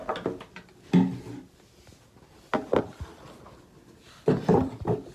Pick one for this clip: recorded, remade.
recorded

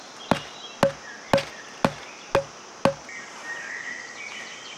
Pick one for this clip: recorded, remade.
recorded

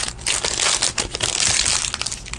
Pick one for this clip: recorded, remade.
recorded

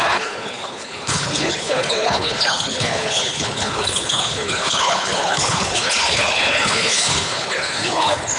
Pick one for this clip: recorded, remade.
remade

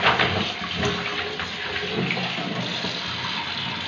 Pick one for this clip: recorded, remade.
recorded